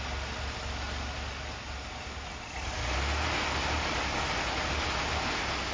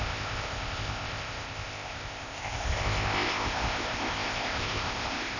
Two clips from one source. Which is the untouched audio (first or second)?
first